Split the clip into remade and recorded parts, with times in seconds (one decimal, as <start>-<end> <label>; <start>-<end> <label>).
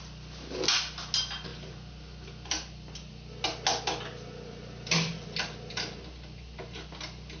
0.0-7.4 recorded